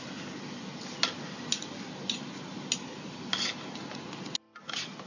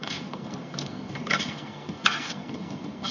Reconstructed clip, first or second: second